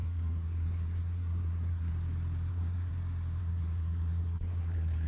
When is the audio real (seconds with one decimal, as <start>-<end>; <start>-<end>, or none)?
1.9-2.5; 2.9-3.4